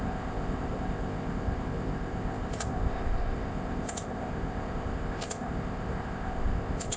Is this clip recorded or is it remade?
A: remade